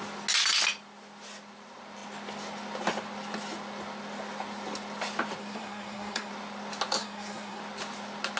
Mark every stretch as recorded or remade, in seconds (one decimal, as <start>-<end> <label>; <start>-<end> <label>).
0.0-5.4 recorded; 5.4-6.3 remade; 6.3-7.0 recorded; 7.0-7.6 remade; 7.6-8.4 recorded

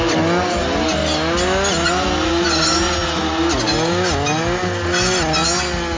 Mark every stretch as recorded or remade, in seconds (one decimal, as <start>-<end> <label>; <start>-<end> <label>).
0.0-6.0 recorded

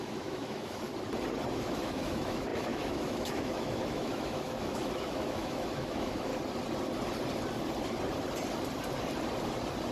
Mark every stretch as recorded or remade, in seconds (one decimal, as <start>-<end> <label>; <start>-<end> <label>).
0.0-0.9 remade; 0.9-1.5 recorded; 1.5-6.3 remade; 6.3-9.9 recorded

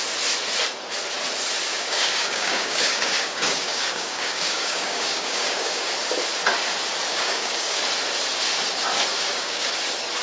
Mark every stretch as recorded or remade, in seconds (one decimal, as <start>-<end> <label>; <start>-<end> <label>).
0.0-1.7 recorded; 1.7-5.9 remade; 5.9-7.1 recorded; 7.1-7.8 remade; 7.8-9.1 recorded; 9.1-9.7 remade; 9.7-10.2 recorded

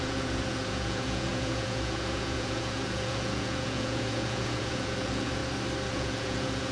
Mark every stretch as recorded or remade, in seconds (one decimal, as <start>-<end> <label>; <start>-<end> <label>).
0.0-5.4 remade; 5.4-5.9 recorded; 5.9-6.7 remade

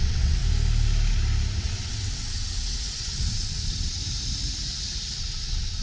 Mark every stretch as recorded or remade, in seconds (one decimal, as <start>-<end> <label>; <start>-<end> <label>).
0.0-0.4 remade; 0.4-1.6 recorded; 1.6-4.0 remade; 4.0-5.2 recorded; 5.2-5.8 remade

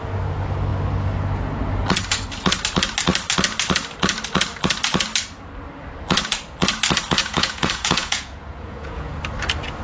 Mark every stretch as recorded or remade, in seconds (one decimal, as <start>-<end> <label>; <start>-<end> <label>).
0.0-7.2 recorded; 7.2-9.2 remade; 9.2-9.8 recorded